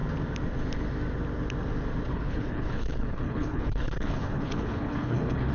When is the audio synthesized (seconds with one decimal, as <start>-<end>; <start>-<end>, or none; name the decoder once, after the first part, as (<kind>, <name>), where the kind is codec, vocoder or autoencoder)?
2.1-5.5 (codec, HILCodec)